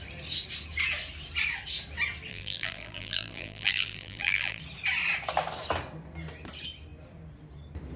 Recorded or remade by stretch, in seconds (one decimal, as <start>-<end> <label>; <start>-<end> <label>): 0.0-2.3 recorded; 2.3-4.6 remade; 4.6-8.0 recorded